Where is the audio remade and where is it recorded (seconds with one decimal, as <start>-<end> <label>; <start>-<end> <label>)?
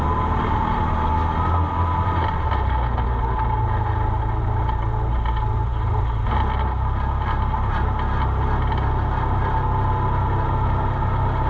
0.0-11.5 recorded